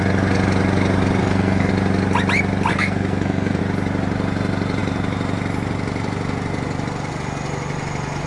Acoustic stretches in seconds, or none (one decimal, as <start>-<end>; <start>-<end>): 0.0-1.2; 1.7-2.7; 3.6-8.3

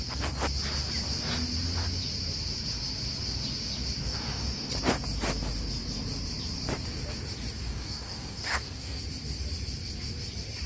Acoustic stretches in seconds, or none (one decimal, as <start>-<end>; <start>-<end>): 0.0-4.0; 4.7-7.6; 9.0-10.7

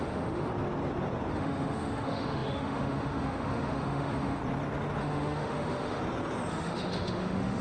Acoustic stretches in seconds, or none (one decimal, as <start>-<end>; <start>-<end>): 0.5-1.3; 4.4-5.0; 6.0-6.5